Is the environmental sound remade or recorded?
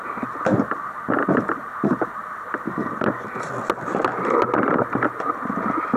recorded